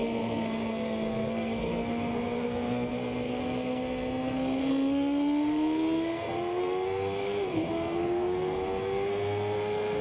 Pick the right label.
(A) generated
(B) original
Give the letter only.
A